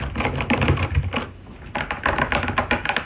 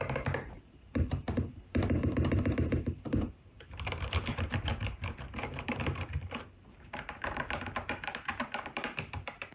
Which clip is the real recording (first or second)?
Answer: first